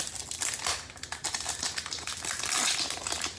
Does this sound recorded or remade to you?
recorded